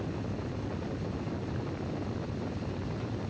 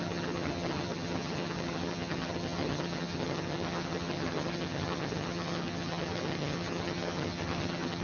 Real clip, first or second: first